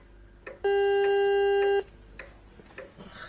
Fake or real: real